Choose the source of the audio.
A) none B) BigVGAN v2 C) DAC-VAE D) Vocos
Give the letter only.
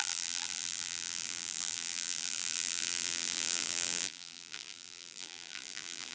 B